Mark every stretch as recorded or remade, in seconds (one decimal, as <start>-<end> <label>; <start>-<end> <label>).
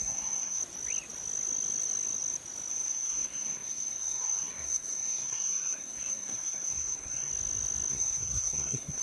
0.0-0.6 remade; 0.6-2.7 recorded; 2.7-7.3 remade; 7.3-7.9 recorded; 7.9-9.0 remade